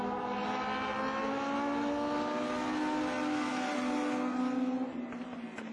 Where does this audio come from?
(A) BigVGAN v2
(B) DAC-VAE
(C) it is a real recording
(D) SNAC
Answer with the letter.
C